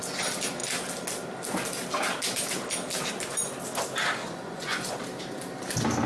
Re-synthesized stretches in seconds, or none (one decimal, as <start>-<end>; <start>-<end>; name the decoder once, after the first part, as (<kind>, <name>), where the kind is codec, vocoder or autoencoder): 4.2-5.0 (vocoder, Vocos)